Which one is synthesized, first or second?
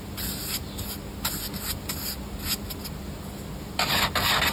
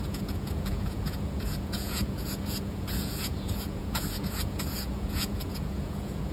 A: second